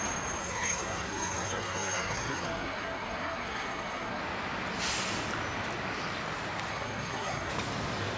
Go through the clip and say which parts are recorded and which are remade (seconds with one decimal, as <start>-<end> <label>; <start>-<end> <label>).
0.0-0.4 recorded; 0.4-4.2 remade; 4.2-6.7 recorded; 6.7-7.5 remade; 7.5-8.2 recorded